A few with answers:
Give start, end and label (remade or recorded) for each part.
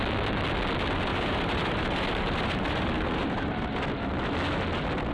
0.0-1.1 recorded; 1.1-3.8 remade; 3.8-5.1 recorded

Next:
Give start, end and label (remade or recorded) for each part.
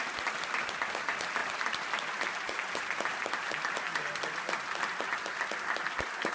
0.0-6.3 recorded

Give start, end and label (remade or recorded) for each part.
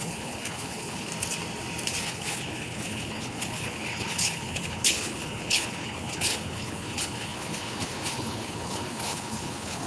0.0-1.1 remade; 1.1-2.0 recorded; 2.0-9.9 remade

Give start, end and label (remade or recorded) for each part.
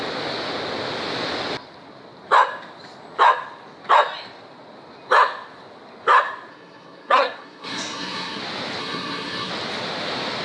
0.0-6.5 recorded; 6.5-8.4 remade; 8.4-8.8 recorded; 8.8-9.5 remade; 9.5-10.4 recorded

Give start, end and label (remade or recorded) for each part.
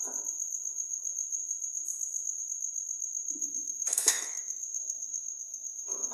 0.0-3.4 recorded; 3.4-6.1 remade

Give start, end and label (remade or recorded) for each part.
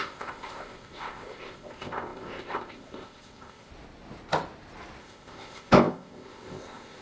0.0-3.7 remade; 3.7-5.0 recorded; 5.0-7.0 remade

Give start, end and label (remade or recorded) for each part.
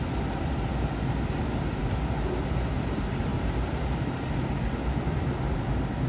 0.0-1.8 recorded; 1.8-2.4 remade; 2.4-6.1 recorded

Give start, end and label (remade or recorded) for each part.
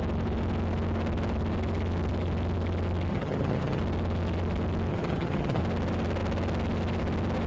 0.0-3.1 recorded; 3.1-3.8 remade; 3.8-4.9 recorded; 4.9-5.6 remade; 5.6-7.5 recorded